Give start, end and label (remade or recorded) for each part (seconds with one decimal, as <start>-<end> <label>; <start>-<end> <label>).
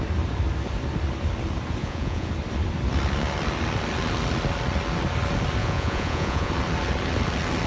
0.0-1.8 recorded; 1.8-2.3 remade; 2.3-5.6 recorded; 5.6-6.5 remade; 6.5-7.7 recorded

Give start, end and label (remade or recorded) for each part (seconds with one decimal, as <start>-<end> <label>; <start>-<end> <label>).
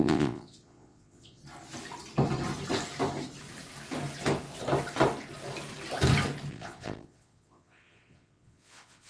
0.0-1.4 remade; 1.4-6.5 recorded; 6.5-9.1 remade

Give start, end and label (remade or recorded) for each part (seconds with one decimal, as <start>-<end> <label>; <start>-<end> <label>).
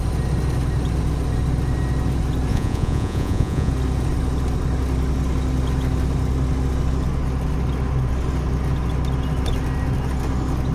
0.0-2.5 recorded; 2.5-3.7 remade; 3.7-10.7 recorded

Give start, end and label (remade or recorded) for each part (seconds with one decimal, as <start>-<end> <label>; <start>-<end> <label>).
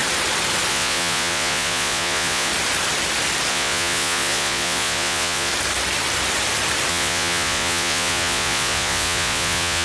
0.0-0.7 recorded; 0.7-2.5 remade; 2.5-3.5 recorded; 3.5-5.5 remade; 5.5-6.9 recorded; 6.9-9.8 remade